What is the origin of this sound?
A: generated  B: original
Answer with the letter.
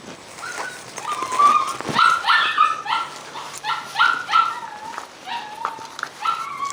B